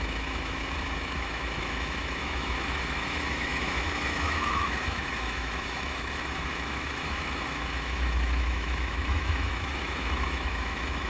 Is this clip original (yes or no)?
no